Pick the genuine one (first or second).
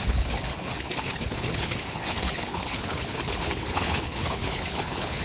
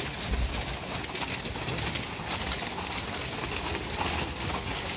second